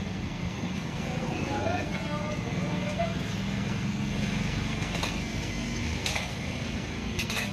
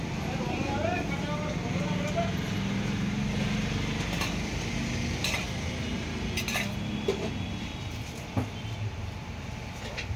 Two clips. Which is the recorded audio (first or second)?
second